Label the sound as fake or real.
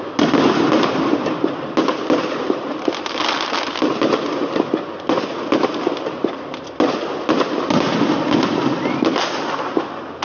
real